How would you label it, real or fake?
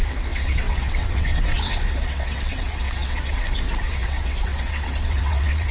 fake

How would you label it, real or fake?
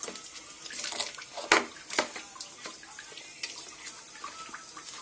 real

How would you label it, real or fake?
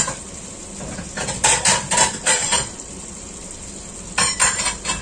real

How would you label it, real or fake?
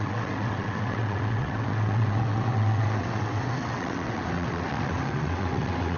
fake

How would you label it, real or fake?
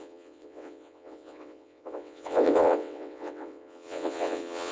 fake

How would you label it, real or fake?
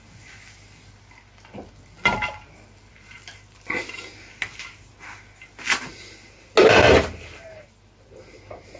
real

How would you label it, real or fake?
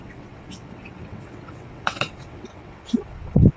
fake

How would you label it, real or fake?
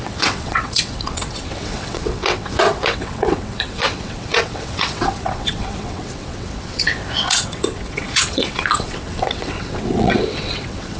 fake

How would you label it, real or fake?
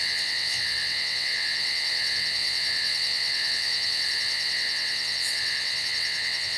fake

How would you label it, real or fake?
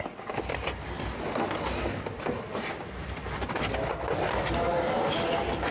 real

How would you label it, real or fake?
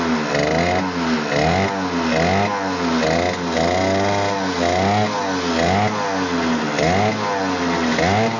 real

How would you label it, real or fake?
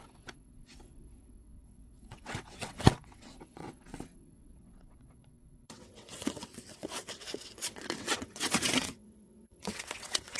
fake